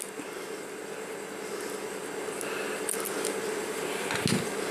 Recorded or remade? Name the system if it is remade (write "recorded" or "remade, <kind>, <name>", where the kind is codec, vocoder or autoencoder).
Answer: recorded